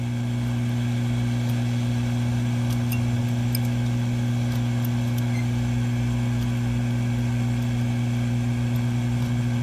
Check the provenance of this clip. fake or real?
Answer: real